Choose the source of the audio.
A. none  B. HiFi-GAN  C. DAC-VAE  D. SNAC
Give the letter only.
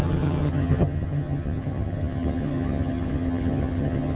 B